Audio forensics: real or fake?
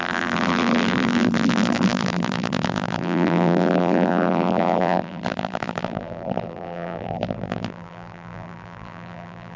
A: fake